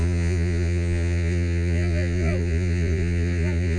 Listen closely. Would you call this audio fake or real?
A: fake